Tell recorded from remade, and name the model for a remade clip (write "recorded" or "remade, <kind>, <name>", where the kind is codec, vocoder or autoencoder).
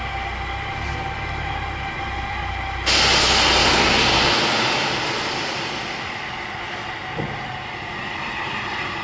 recorded